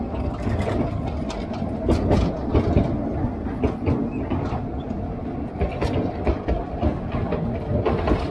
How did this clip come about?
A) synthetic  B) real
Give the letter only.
B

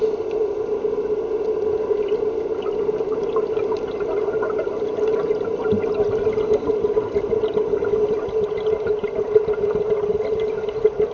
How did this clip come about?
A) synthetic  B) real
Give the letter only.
B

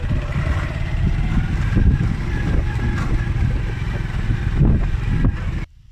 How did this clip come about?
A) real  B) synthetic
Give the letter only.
A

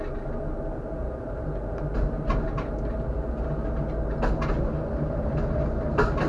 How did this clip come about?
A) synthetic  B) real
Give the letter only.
B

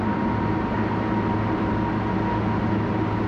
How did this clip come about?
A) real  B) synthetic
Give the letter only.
A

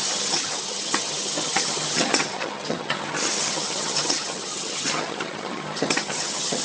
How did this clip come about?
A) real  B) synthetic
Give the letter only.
B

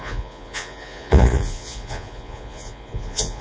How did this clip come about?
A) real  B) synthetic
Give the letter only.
B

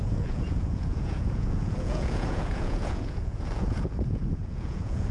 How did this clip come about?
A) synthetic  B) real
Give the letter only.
A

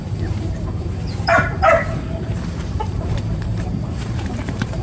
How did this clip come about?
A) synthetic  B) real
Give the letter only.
A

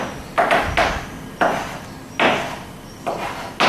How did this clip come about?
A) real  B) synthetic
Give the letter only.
A